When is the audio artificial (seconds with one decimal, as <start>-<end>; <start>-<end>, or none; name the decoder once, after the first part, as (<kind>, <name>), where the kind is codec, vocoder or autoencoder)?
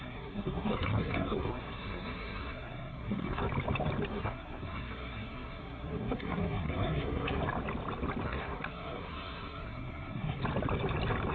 0.0-3.4 (codec, SNAC); 4.1-7.4; 8.2-10.4